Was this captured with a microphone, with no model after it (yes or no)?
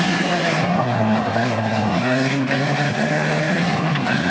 no